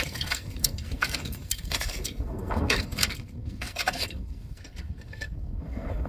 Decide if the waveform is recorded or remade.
remade